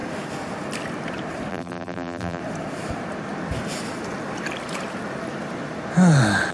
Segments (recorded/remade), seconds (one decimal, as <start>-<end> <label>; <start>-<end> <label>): 0.0-1.5 recorded; 1.5-2.4 remade; 2.4-6.5 recorded